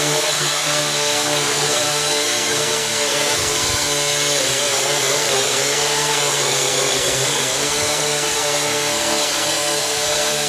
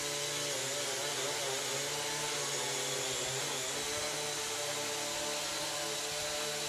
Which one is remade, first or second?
first